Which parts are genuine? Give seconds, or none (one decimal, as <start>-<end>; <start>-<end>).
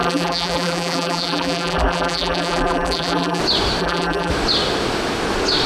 3.4-3.8; 4.3-5.7